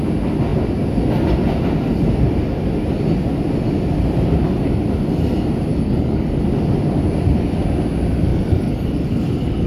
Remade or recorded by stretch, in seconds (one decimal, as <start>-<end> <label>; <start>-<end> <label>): 0.0-5.7 recorded; 5.7-6.4 remade; 6.4-8.3 recorded; 8.3-9.7 remade